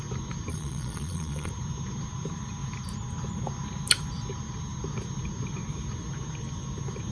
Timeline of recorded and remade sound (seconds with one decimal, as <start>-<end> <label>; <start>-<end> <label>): 0.0-0.5 recorded; 0.5-1.5 remade; 1.5-7.1 recorded